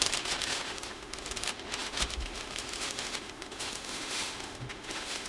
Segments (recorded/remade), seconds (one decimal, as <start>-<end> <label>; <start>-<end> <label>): 0.0-5.3 remade